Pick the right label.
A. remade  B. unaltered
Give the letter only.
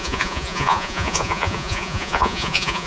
A